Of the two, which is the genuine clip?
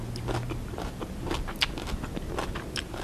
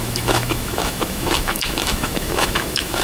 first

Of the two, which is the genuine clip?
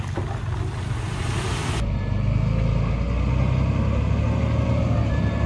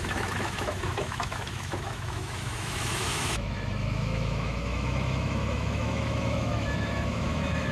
first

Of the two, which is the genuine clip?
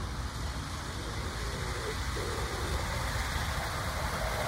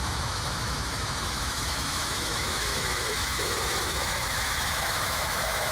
first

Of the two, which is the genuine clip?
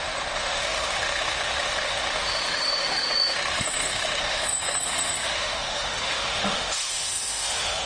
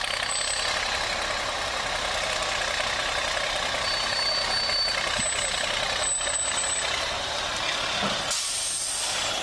second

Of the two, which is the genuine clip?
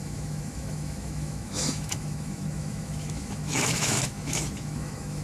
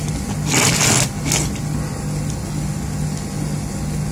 second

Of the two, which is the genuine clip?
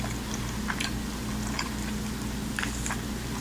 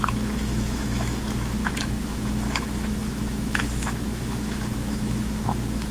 first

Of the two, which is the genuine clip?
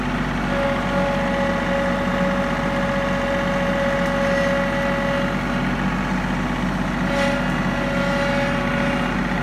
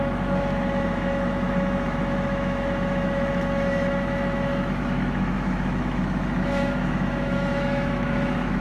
first